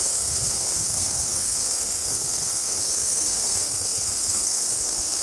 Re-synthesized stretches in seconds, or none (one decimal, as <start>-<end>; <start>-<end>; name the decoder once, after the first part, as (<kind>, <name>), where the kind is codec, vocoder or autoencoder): 0.0-5.2 (codec, SNAC)